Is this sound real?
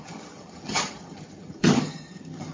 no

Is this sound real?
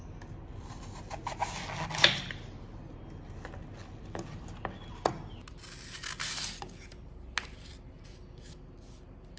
yes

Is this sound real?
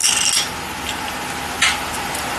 yes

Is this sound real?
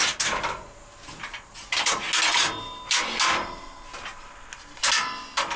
yes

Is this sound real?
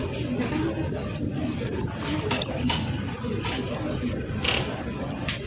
yes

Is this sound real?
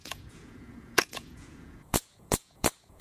no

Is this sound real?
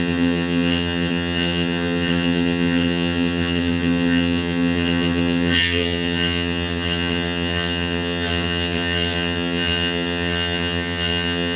no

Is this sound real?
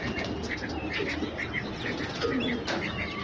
yes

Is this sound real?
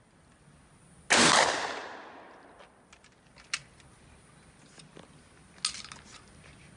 yes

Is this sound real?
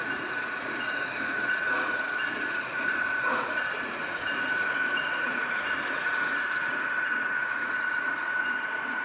no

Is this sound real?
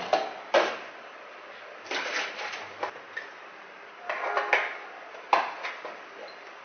yes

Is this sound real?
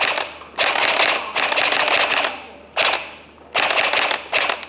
yes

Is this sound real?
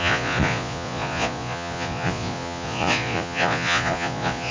no